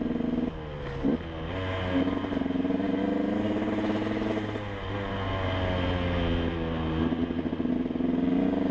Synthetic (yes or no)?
no